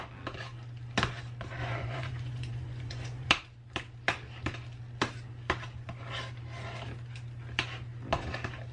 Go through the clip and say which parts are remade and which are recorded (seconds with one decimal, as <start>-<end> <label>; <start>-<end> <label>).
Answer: 0.0-1.6 recorded; 1.6-3.3 remade; 3.3-8.7 recorded

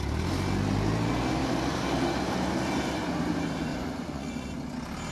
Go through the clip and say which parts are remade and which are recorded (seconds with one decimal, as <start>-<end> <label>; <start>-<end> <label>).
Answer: 0.0-3.7 recorded; 3.7-4.5 remade; 4.5-5.1 recorded

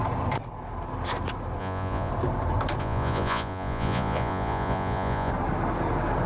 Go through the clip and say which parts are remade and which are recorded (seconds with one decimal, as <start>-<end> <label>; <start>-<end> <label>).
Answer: 0.0-1.6 recorded; 1.6-2.1 remade; 2.1-2.8 recorded; 2.8-5.3 remade; 5.3-6.3 recorded

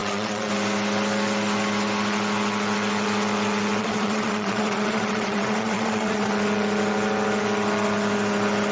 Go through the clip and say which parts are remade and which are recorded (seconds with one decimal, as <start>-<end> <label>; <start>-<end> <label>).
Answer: 0.0-0.5 remade; 0.5-3.8 recorded; 3.8-6.3 remade; 6.3-8.7 recorded

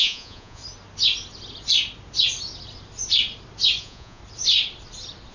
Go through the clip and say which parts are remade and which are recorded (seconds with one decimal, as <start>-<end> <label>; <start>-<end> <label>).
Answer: 0.0-0.6 remade; 0.6-3.8 recorded; 3.8-4.2 remade; 4.2-5.3 recorded

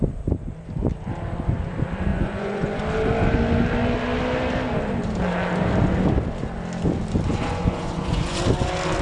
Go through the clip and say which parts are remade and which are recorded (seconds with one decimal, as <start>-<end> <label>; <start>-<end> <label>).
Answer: 0.0-2.1 recorded; 2.1-2.8 remade; 2.8-7.3 recorded; 7.3-8.4 remade; 8.4-9.0 recorded

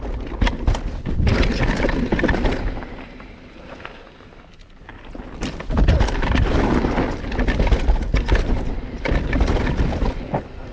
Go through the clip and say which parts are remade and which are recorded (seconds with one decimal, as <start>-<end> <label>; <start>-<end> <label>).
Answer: 0.0-10.7 recorded

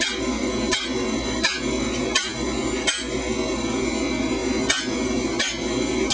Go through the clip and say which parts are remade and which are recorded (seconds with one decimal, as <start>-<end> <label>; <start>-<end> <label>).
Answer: 0.0-6.1 recorded